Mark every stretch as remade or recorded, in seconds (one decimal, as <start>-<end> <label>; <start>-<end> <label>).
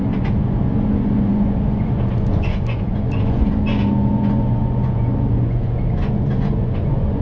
0.0-7.2 remade